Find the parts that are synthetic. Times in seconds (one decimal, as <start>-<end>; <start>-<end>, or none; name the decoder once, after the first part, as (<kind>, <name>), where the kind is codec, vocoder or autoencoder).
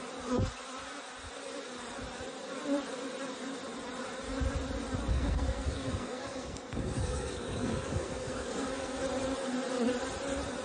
5.1-9.0 (codec, SNAC)